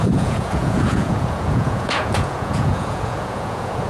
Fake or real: fake